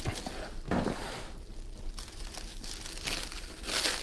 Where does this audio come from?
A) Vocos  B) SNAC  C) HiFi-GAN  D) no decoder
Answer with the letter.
D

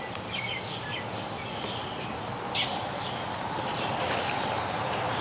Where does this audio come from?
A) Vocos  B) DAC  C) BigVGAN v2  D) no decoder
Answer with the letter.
D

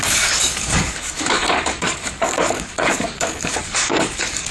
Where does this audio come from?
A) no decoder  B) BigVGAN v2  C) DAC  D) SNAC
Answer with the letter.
C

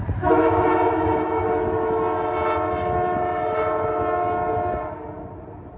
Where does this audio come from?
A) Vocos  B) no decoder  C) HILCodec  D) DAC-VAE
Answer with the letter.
B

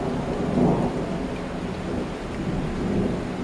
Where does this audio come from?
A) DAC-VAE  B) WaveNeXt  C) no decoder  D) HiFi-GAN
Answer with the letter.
C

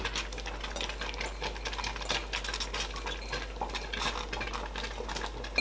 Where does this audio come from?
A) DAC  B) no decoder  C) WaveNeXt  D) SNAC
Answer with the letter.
B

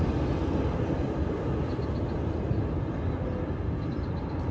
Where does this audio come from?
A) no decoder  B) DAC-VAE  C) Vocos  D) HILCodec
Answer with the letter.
A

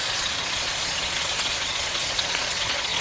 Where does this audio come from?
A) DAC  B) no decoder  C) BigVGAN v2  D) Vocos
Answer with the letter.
D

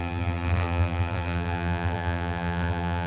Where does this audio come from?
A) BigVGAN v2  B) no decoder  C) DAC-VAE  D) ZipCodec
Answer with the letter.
A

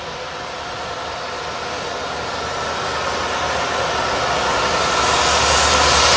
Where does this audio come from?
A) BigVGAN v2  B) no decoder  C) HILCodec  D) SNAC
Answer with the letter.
B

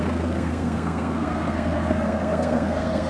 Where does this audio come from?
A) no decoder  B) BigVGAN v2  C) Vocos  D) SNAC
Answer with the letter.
D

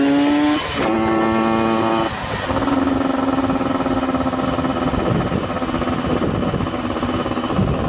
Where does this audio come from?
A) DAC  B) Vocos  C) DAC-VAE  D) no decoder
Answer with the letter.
D